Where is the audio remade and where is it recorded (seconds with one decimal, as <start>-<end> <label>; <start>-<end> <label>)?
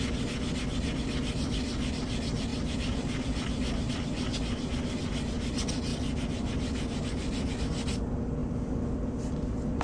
0.0-9.8 recorded